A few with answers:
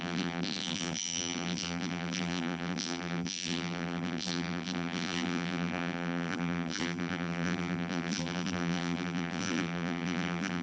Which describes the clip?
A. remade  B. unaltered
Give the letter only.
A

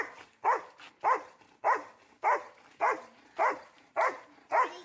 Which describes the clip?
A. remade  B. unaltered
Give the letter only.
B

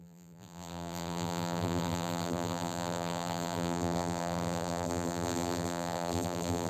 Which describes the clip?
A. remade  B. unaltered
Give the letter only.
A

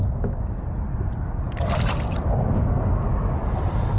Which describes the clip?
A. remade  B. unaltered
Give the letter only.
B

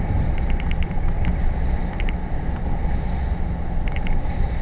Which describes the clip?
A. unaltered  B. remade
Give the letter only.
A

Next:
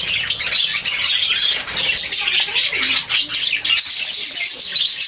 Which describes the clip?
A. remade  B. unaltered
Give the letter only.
B